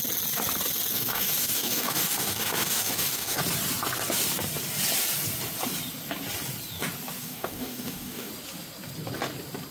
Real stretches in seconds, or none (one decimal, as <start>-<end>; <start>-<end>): 0.0-0.9; 3.4-7.2; 8.3-9.7